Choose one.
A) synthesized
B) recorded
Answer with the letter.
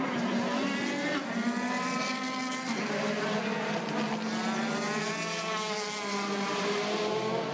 B